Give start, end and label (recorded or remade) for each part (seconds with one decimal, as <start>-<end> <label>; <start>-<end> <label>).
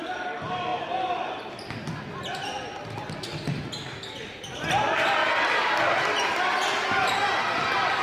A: 0.0-8.0 recorded